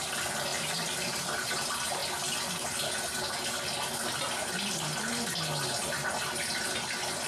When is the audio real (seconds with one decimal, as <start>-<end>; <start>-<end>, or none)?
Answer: 0.0-0.5; 1.5-7.3